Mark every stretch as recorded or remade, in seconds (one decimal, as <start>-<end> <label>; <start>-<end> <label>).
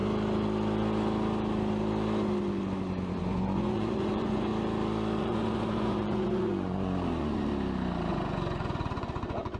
0.0-3.2 recorded; 3.2-4.5 remade; 4.5-5.2 recorded; 5.2-7.5 remade; 7.5-8.1 recorded; 8.1-9.6 remade